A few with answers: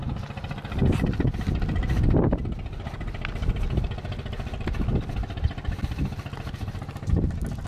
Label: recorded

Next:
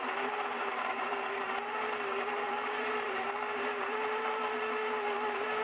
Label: remade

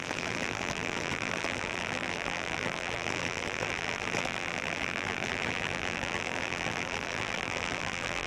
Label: remade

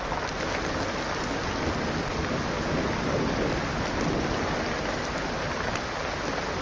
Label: recorded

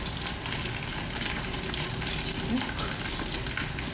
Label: recorded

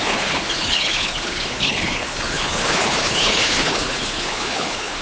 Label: remade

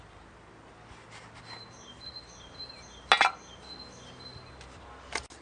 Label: recorded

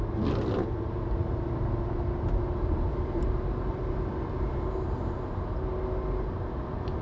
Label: recorded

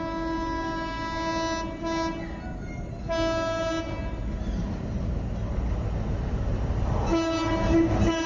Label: recorded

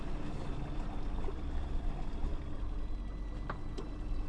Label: recorded